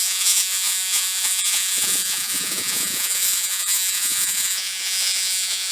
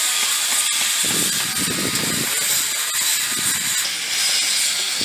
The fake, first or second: first